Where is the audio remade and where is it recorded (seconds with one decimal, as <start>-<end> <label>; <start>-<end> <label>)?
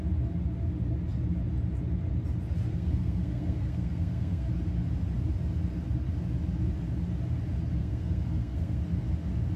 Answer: 0.0-2.7 recorded; 2.7-4.5 remade; 4.5-7.8 recorded; 7.8-8.8 remade; 8.8-9.6 recorded